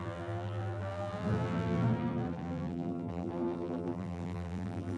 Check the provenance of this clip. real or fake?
fake